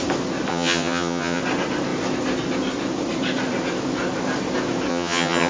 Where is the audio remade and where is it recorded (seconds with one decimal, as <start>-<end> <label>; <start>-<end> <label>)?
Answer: 0.0-0.5 recorded; 0.5-1.4 remade; 1.4-4.9 recorded; 4.9-5.5 remade